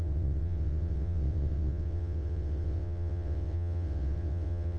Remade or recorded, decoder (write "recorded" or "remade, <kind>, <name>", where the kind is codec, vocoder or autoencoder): remade, vocoder, WaveNeXt